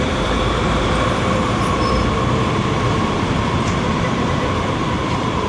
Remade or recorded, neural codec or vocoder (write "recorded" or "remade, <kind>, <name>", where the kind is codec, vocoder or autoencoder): remade, vocoder, BigVGAN v2